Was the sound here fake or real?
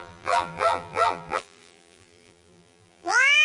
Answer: fake